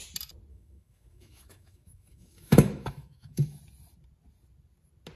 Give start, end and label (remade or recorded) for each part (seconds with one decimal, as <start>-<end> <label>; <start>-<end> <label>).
0.0-0.5 recorded; 0.5-3.6 remade; 3.6-5.2 recorded